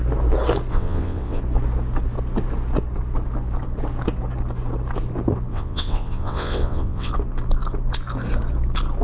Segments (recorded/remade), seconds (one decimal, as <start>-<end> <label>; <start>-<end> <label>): 0.0-0.7 recorded; 0.7-1.4 remade; 1.4-5.5 recorded; 5.5-7.1 remade; 7.1-9.0 recorded